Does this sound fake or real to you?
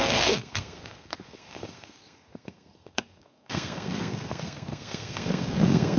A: fake